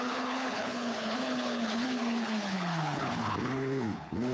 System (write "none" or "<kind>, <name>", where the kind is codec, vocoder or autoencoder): codec, HILCodec